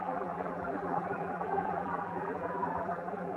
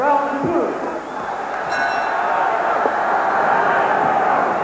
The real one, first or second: second